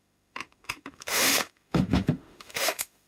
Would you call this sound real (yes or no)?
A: no